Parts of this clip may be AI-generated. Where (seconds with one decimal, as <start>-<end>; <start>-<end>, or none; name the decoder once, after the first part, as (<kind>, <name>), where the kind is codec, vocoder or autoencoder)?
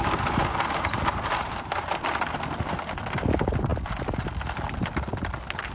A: none